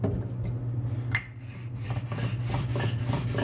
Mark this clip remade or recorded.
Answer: recorded